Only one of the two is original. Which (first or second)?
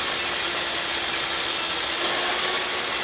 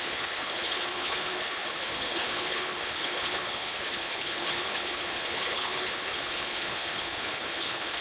first